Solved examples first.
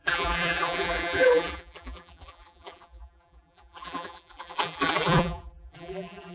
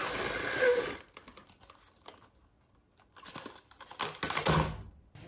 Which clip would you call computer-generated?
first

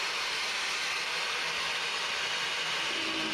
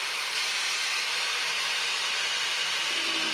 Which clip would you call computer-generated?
second